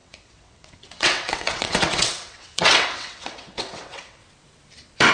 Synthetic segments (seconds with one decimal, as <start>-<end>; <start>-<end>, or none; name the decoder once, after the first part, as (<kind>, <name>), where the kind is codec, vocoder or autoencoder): 0.0-4.2 (vocoder, WaveNeXt)